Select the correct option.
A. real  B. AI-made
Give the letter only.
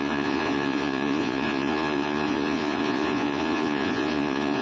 B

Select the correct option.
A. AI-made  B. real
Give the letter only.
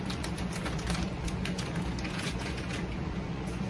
A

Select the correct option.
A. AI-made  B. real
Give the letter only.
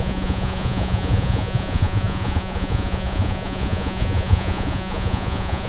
A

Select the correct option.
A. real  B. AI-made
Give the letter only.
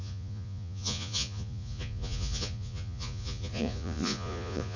B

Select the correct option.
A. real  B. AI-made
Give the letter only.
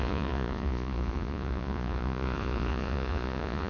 B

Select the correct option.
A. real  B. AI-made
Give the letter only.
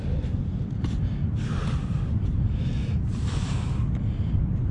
A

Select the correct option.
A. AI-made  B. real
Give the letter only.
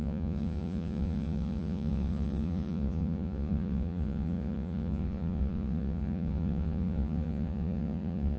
A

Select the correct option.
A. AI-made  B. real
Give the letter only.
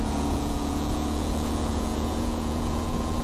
A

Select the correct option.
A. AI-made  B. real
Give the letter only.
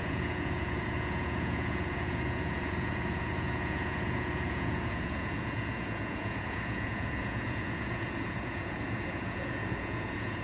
A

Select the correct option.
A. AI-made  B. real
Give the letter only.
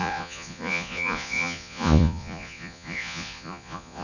A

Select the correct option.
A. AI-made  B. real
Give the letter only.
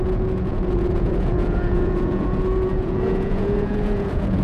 A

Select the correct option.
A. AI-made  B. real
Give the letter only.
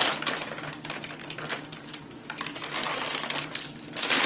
B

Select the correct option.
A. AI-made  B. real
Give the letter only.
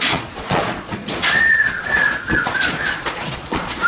A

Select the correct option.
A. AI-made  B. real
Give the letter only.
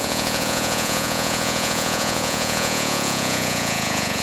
A